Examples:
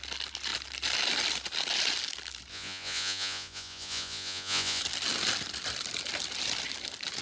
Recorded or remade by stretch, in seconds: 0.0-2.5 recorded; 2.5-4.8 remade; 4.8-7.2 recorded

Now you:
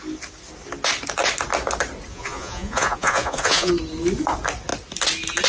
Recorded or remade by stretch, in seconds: 0.0-2.1 recorded; 2.1-3.7 remade; 3.7-5.5 recorded

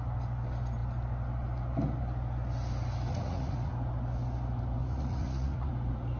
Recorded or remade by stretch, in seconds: 0.0-3.1 recorded; 3.1-3.7 remade; 3.7-4.8 recorded; 4.8-5.7 remade; 5.7-6.2 recorded

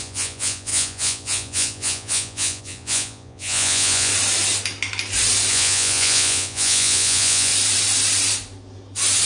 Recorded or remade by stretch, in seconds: 0.0-4.1 remade; 4.1-5.5 recorded; 5.5-7.5 remade; 7.5-9.3 recorded